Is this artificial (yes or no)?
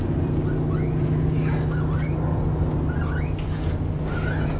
no